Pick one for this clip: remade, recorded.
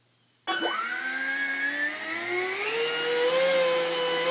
recorded